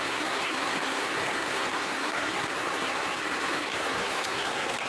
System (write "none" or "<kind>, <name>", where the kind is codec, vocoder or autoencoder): codec, SNAC